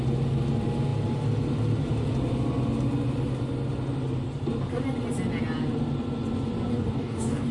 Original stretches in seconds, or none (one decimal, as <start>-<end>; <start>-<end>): 0.0-6.7